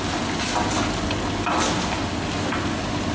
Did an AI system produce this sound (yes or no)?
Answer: no